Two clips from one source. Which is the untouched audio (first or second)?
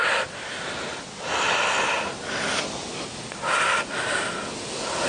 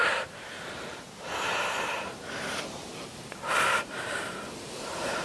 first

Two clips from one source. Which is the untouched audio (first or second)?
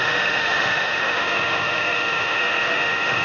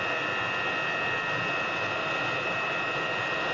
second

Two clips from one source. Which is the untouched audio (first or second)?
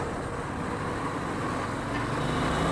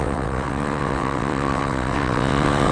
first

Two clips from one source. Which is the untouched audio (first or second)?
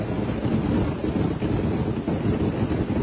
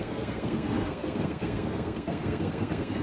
first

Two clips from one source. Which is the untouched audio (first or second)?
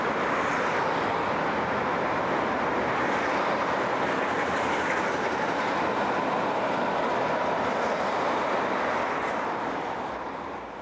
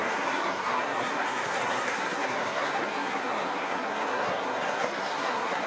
first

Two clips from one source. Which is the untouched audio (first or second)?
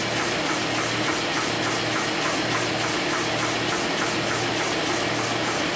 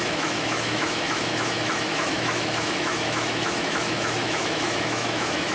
first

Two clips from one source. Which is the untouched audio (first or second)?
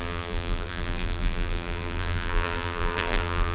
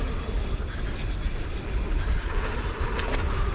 second